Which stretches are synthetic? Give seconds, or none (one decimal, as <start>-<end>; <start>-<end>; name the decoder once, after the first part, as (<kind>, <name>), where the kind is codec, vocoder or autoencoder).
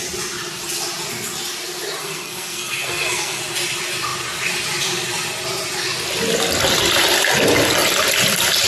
2.0-3.4 (codec, SNAC)